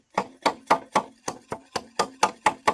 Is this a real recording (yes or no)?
yes